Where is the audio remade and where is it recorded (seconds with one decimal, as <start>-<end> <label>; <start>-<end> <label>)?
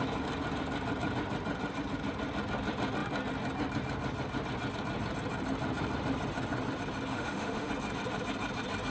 0.0-7.1 recorded; 7.1-7.7 remade; 7.7-8.9 recorded